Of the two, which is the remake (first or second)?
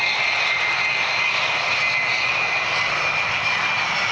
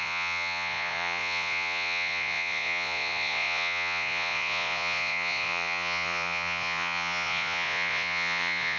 second